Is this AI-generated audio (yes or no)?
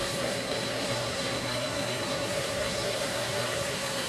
yes